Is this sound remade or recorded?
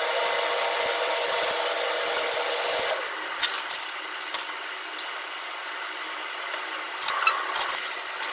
recorded